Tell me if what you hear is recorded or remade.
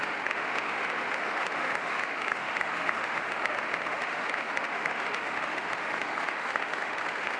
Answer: remade